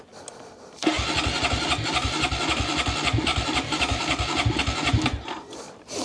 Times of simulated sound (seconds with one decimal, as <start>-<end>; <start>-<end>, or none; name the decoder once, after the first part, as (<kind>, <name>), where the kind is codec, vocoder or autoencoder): 3.3-6.0 (vocoder, BigVGAN v2)